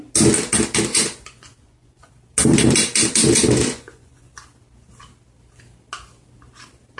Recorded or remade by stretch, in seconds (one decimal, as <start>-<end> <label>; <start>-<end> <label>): 0.0-0.9 recorded; 0.9-2.1 remade; 2.1-3.2 recorded; 3.2-4.3 remade; 4.3-7.0 recorded